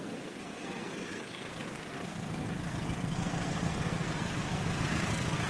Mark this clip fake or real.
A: fake